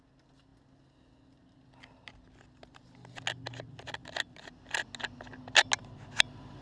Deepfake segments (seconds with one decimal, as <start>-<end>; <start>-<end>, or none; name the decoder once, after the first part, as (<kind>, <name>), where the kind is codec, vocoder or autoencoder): none